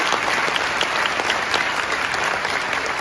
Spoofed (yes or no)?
no